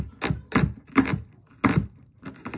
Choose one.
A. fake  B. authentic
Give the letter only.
B